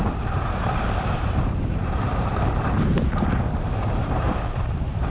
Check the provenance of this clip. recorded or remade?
remade